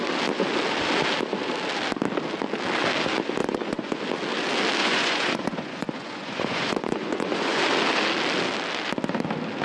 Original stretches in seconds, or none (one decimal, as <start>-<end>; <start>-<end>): 0.0-3.4; 4.0-4.8; 7.6-9.6